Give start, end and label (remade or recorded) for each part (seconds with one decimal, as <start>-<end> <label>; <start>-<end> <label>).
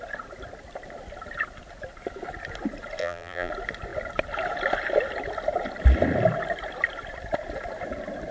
0.0-3.0 recorded; 3.0-3.5 remade; 3.5-8.3 recorded